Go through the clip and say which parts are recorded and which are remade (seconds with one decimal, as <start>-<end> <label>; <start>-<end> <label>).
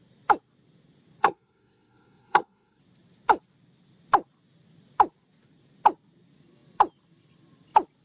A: 0.0-1.2 recorded; 1.2-2.8 remade; 2.8-8.0 recorded